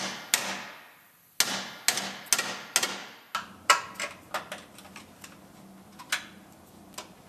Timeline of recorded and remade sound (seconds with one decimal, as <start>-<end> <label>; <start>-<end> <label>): 0.0-7.3 recorded